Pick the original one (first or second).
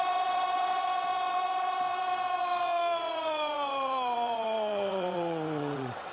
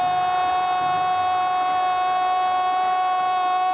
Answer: second